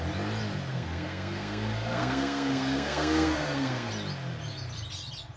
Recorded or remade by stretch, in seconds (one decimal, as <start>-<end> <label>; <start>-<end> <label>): 0.0-0.7 recorded; 0.7-3.9 remade; 3.9-5.4 recorded